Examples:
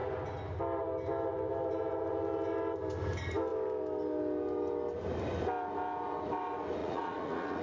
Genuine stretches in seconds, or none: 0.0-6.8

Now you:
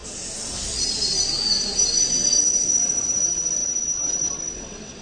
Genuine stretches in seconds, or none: 0.0-2.4

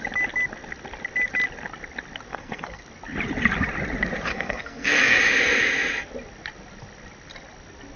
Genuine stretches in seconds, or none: 0.0-2.3; 2.8-4.3; 5.2-8.0